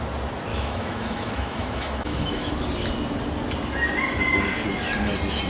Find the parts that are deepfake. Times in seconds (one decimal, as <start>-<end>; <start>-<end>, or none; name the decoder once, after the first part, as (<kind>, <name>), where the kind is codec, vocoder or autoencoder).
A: 0.5-2.5 (autoencoder, DAC-VAE)